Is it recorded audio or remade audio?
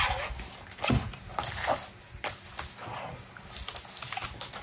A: recorded